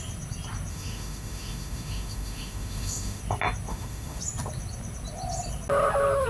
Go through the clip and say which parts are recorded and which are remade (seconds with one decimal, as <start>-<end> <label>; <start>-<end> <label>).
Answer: 0.0-0.7 recorded; 0.7-3.2 remade; 3.2-3.7 recorded; 3.7-4.2 remade; 4.2-6.3 recorded